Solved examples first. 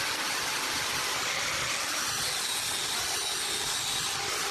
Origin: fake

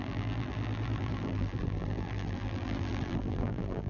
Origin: fake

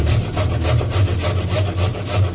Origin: real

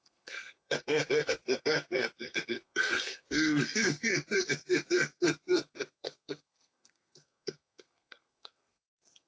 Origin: fake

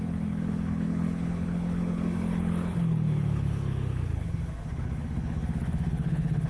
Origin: fake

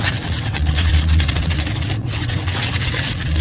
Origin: fake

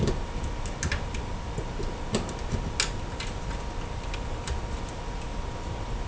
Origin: real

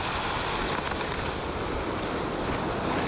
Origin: real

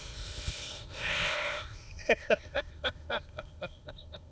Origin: fake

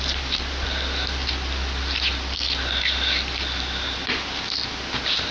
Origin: real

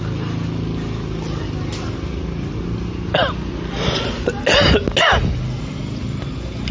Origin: real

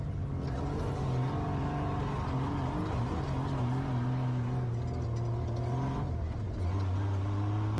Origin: real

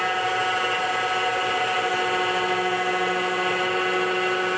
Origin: real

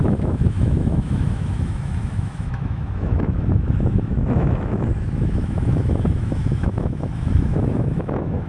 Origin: fake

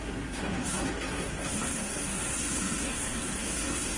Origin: fake